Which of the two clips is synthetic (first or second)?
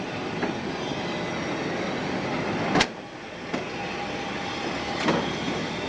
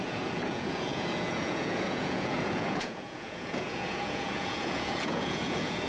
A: second